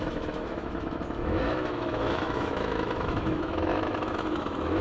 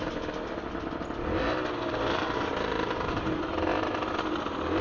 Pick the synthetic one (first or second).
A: first